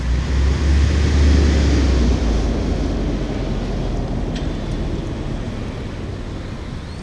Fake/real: real